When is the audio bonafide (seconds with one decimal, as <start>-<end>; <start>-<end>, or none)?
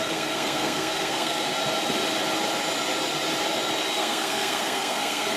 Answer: 1.5-4.0